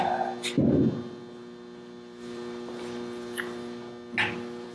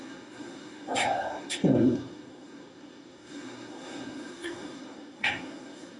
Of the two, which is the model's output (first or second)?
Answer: second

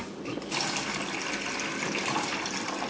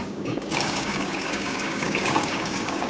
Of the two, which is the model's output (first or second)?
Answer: second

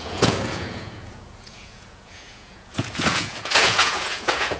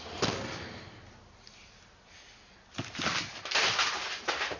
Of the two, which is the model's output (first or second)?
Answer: first